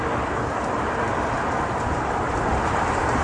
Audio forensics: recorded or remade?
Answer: recorded